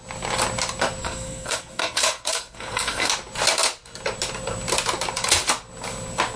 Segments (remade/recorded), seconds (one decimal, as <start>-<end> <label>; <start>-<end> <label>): 0.0-1.0 recorded; 1.0-3.1 remade; 3.1-6.4 recorded